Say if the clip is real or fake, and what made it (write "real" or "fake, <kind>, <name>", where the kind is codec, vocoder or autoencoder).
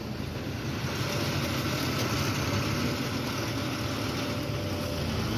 real